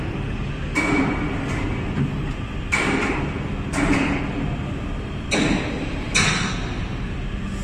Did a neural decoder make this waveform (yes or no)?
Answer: no